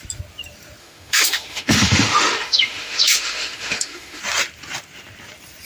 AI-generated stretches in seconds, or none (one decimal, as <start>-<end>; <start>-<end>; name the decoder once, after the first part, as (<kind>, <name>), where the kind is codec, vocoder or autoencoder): 0.8-4.2 (autoencoder, DAC-VAE)